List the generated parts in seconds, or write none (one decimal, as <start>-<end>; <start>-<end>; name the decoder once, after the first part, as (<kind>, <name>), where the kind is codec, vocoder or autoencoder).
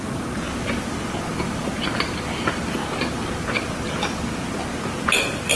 none